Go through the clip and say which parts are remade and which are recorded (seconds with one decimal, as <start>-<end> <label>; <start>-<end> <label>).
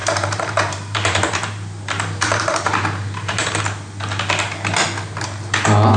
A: 0.0-3.6 remade; 3.6-6.0 recorded